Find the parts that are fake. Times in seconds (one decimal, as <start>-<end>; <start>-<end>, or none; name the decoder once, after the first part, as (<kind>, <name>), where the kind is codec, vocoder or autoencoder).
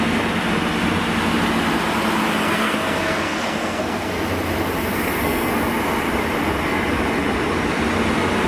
2.4-4.1 (codec, SNAC); 4.9-5.5